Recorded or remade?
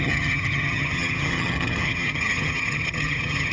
remade